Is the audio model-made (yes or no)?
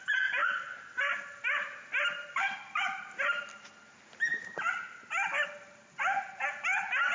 no